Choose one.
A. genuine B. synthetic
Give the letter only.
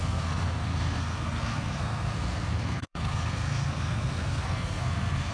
B